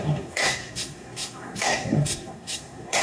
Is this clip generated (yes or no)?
yes